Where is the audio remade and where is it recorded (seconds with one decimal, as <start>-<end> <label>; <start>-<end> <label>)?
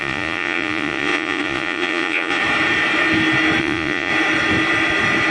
0.0-2.4 remade; 2.4-3.6 recorded; 3.6-4.1 remade; 4.1-5.3 recorded